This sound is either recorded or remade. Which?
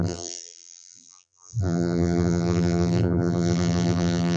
remade